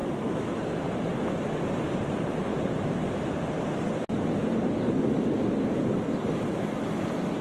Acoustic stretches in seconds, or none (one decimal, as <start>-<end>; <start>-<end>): 0.6-7.4